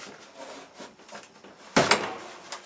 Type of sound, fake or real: real